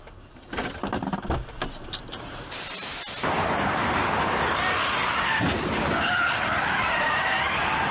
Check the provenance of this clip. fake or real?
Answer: real